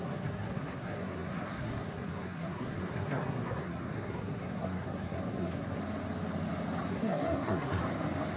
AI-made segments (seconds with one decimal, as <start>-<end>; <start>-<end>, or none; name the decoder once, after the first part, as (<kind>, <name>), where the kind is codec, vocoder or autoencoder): 0.0-5.8 (codec, SNAC); 6.9-7.8